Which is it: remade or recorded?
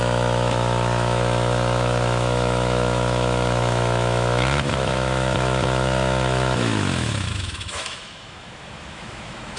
remade